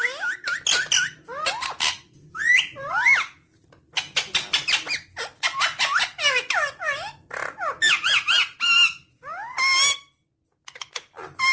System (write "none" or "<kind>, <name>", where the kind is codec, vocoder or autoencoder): none